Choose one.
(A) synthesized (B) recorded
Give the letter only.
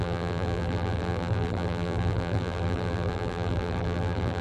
A